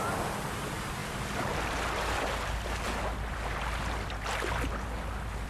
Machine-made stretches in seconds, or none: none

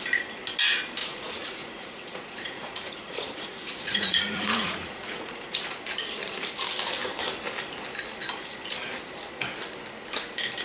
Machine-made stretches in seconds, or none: 1.0-5.8 (vocoder, Vocos)